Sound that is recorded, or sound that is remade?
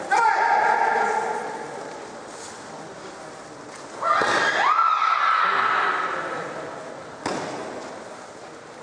recorded